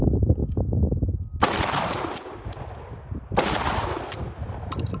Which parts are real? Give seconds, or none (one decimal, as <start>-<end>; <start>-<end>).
0.0-5.0